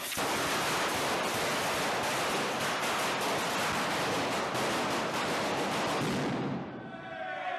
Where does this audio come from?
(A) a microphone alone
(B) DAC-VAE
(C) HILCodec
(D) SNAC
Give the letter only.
A